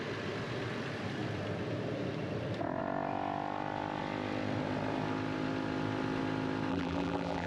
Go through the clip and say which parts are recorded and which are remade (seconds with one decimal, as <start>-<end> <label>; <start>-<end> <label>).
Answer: 0.0-6.7 recorded; 6.7-7.5 remade